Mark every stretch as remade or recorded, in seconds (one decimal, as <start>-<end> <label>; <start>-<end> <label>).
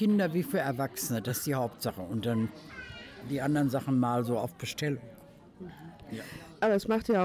0.0-7.2 recorded